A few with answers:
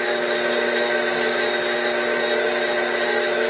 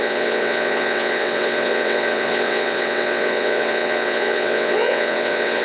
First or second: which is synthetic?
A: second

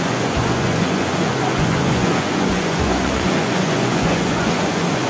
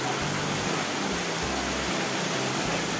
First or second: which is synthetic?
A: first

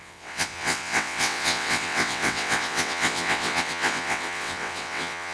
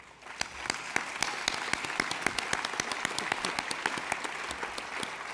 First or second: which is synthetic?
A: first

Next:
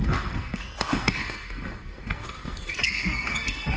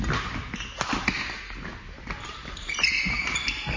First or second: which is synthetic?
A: first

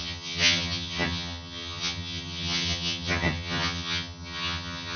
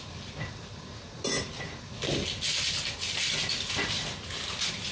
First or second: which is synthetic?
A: first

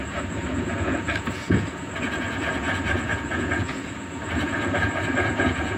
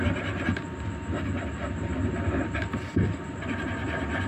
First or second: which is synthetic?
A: first